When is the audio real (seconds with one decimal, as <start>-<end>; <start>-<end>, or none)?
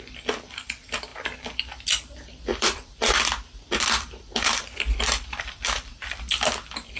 0.0-2.5; 6.2-7.0